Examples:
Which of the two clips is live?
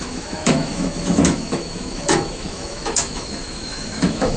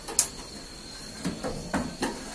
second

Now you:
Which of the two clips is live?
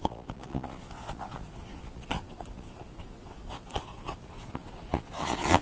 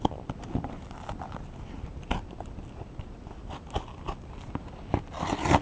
second